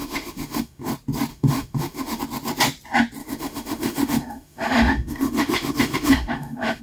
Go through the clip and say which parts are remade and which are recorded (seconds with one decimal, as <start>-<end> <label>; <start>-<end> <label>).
0.0-0.9 remade; 0.9-1.3 recorded; 1.3-2.2 remade; 2.2-3.2 recorded; 3.2-6.8 remade